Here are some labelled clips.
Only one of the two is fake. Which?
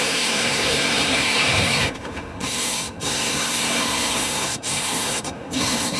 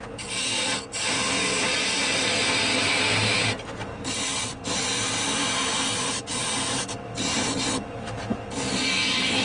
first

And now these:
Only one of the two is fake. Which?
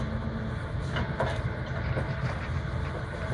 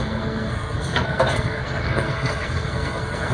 second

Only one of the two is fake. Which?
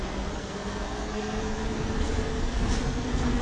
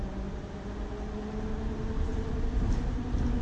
first